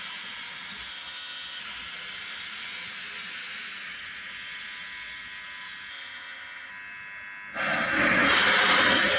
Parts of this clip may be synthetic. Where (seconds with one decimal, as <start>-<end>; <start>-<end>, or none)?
0.9-1.6; 5.9-6.7